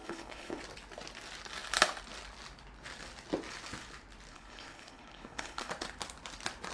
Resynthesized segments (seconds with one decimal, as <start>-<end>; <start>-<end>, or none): 0.0-0.6; 4.3-5.7

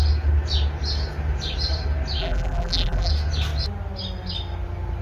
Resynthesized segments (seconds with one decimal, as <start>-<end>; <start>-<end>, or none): 2.2-3.1